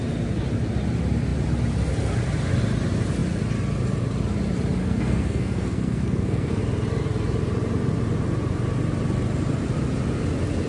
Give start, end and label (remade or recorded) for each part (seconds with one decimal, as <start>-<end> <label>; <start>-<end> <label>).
0.0-4.8 recorded; 4.8-6.6 remade; 6.6-10.7 recorded